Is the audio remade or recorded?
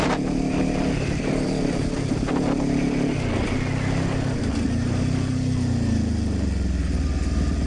recorded